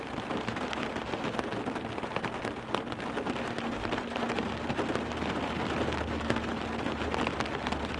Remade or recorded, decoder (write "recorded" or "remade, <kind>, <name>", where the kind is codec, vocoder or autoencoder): recorded